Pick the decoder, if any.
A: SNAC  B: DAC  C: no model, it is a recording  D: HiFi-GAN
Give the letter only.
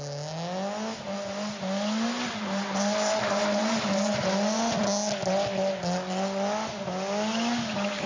C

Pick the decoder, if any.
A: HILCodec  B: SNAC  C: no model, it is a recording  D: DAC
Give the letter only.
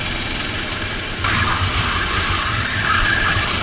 C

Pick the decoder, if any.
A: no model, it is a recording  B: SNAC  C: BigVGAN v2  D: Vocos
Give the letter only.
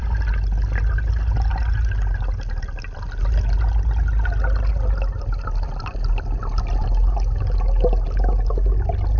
A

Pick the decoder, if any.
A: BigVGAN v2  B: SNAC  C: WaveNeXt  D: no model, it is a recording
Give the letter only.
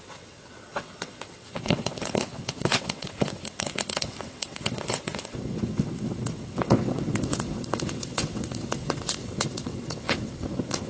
C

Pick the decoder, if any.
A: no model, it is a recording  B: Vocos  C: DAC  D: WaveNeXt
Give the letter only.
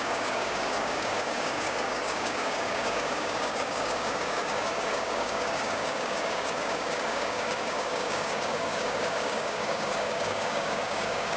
C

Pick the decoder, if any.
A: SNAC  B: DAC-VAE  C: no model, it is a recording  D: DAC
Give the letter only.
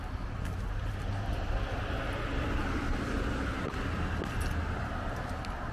C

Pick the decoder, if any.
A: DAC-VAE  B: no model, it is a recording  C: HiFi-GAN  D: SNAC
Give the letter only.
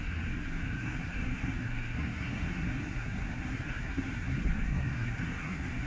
D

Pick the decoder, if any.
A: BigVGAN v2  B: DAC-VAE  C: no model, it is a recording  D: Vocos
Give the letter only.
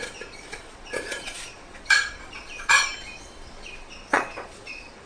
D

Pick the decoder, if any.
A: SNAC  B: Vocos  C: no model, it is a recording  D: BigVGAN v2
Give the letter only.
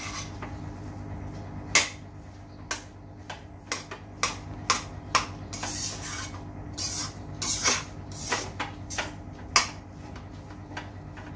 C